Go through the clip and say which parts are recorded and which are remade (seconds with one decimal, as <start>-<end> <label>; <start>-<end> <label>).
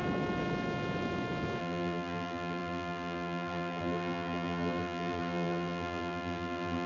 0.0-1.6 recorded; 1.6-6.9 remade